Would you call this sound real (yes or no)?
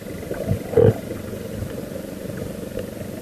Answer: no